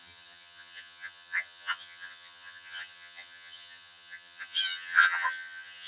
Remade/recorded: remade